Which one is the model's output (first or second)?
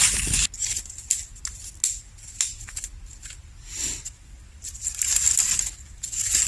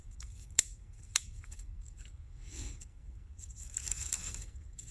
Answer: second